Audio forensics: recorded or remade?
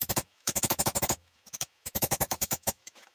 remade